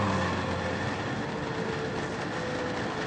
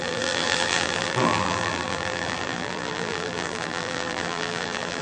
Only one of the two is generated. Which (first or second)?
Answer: second